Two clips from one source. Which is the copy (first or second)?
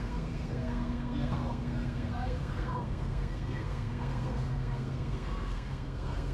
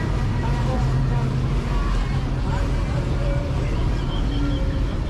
first